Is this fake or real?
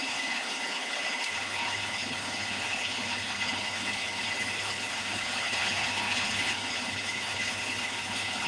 fake